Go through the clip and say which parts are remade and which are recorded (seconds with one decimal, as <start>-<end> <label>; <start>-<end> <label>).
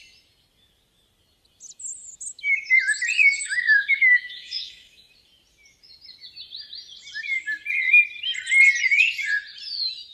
0.0-3.2 recorded; 3.2-5.1 remade; 5.1-10.1 recorded